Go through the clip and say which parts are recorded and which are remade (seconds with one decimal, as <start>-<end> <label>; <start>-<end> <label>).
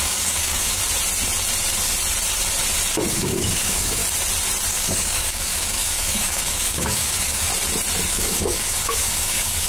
0.0-0.8 remade; 0.8-3.1 recorded; 3.1-4.0 remade; 4.0-4.7 recorded; 4.7-7.5 remade; 7.5-8.1 recorded; 8.1-9.7 remade